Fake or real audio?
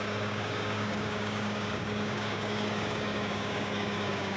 fake